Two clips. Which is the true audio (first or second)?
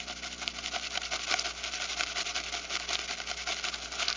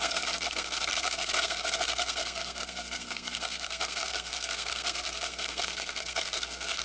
first